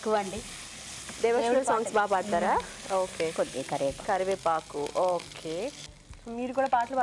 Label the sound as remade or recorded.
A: recorded